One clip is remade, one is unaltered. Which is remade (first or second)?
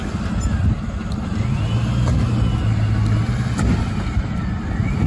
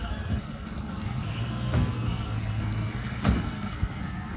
second